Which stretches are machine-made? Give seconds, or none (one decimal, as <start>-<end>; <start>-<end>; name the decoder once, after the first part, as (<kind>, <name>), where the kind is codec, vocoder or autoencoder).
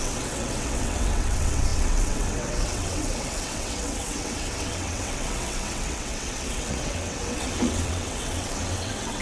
0.0-9.2 (vocoder, WaveNeXt)